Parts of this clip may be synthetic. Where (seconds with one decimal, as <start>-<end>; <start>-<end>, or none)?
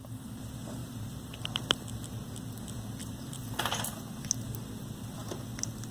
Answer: 0.8-1.4; 3.0-3.6